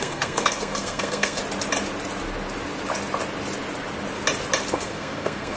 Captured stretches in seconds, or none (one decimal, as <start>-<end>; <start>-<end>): 1.4-4.7

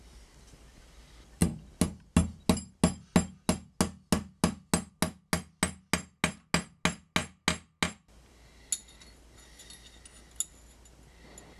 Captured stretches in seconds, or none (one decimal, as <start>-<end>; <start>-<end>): 0.0-11.6